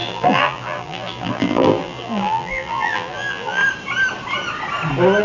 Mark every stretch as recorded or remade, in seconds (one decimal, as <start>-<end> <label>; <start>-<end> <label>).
0.0-3.6 remade; 3.6-5.2 recorded

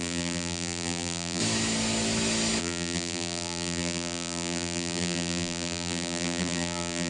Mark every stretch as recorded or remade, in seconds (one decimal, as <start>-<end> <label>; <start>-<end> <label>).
0.0-1.4 remade; 1.4-2.6 recorded; 2.6-7.1 remade